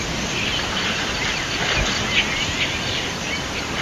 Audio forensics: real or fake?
real